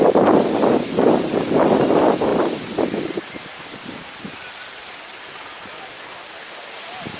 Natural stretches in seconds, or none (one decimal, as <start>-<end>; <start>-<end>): 0.0-2.3; 3.2-7.2